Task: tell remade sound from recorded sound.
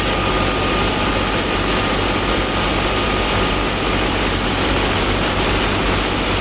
recorded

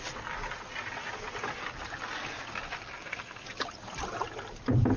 recorded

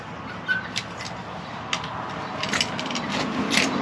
recorded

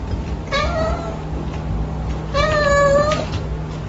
recorded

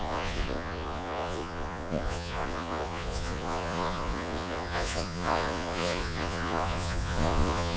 remade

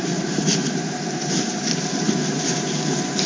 remade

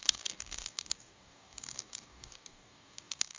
remade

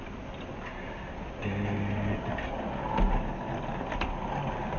recorded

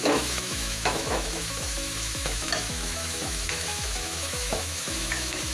remade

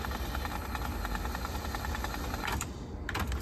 recorded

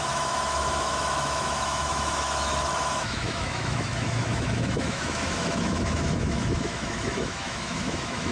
remade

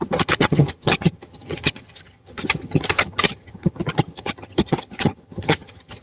remade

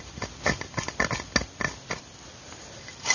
recorded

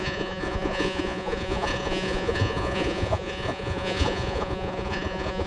remade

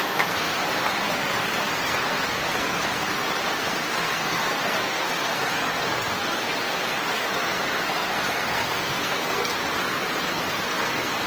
remade